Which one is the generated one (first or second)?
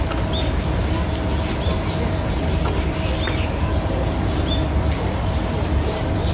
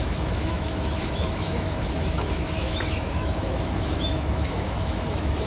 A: second